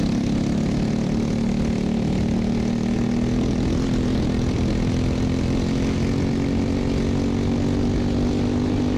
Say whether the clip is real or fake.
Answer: real